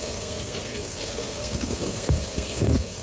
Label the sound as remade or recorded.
remade